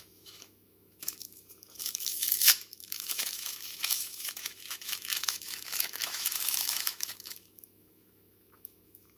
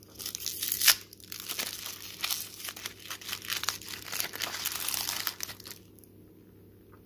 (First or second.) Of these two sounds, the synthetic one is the first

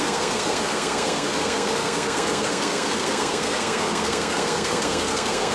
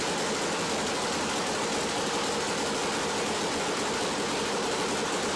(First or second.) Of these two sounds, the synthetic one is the first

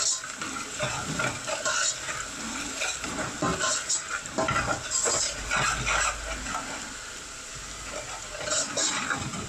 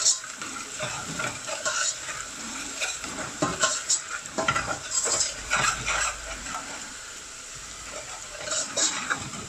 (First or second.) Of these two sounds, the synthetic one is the second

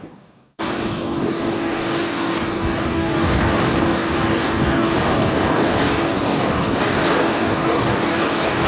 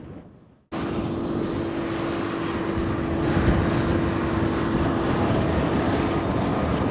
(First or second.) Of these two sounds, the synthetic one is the first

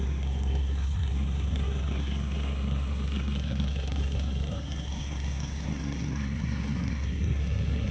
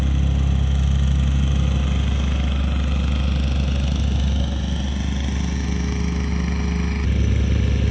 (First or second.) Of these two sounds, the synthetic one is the first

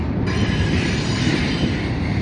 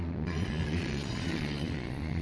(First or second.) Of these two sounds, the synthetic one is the second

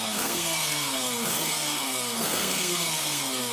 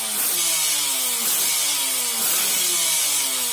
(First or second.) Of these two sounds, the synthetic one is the first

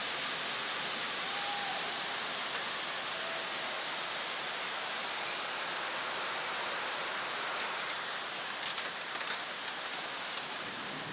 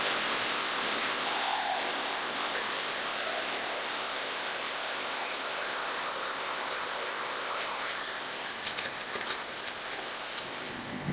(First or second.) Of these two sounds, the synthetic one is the second